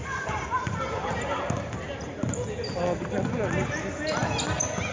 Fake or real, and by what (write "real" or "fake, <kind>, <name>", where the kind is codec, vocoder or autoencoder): real